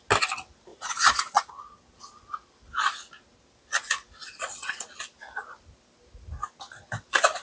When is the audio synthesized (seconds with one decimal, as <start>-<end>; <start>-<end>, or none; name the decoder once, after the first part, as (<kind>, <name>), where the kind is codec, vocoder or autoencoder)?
0.7-2.0 (vocoder, Vocos); 4.2-5.0